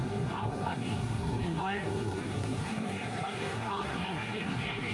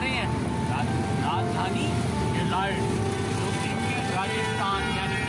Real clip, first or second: second